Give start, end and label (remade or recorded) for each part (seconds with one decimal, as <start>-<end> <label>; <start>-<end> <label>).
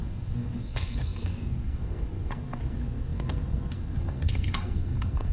0.0-5.3 remade